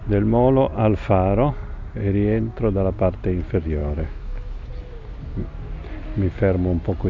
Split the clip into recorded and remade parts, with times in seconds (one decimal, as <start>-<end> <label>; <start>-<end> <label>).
0.0-3.8 recorded; 3.8-4.7 remade; 4.7-7.1 recorded